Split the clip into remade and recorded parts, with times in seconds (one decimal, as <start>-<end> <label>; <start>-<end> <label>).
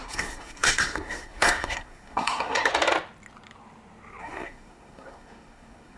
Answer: 0.0-2.7 remade; 2.7-4.2 recorded; 4.2-6.0 remade